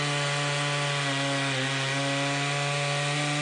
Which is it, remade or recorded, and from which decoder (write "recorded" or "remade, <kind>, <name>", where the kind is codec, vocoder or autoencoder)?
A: recorded